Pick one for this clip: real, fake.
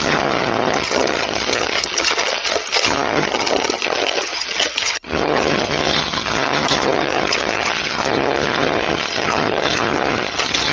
fake